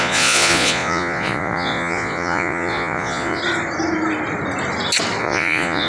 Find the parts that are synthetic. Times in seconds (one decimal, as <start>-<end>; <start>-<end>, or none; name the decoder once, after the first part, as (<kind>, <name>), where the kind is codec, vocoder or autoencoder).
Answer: 0.0-3.4 (vocoder, Vocos); 5.2-5.9